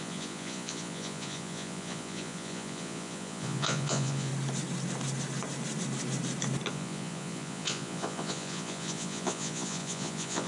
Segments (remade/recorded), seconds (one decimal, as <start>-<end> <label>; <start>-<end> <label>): 0.0-4.3 remade; 4.3-6.7 recorded; 6.7-10.5 remade